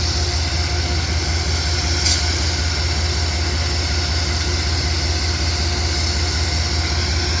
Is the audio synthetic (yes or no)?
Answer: no